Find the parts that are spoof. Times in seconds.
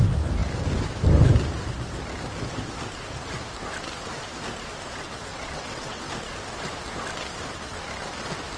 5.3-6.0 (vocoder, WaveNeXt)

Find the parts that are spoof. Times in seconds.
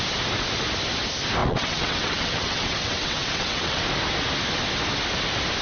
1.4-3.8 (vocoder, WaveNeXt)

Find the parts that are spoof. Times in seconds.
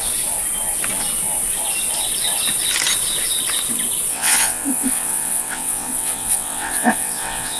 4.1-7.6 (vocoder, WaveNeXt)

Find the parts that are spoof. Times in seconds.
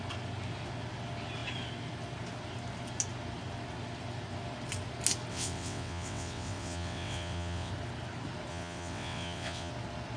5.3-7.7 (vocoder, WaveNeXt); 8.5-9.7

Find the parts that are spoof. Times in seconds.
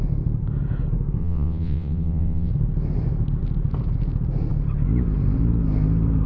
1.2-2.5 (vocoder, WaveNeXt)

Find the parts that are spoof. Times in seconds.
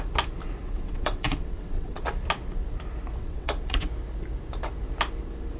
0.6-2.0 (vocoder, WaveNeXt); 3.2-3.9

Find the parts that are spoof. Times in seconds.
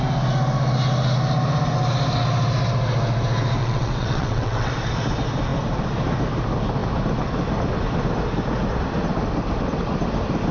3.6-4.7 (vocoder, WaveNeXt)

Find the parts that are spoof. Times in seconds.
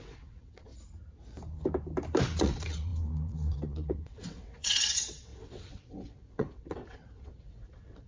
0.0-0.7 (vocoder, WaveNeXt); 2.4-8.1